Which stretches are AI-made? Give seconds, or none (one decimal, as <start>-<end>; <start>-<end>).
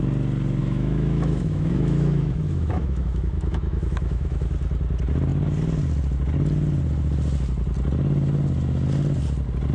0.6-4.5